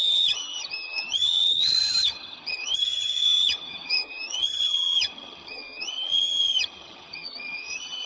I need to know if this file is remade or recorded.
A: remade